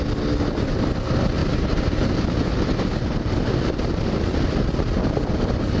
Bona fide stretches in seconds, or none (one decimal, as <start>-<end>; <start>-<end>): 0.0-1.4; 2.4-5.8